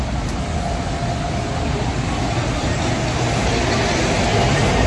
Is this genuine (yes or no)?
yes